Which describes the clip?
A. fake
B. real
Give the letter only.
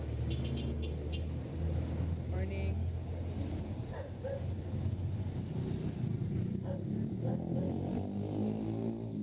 B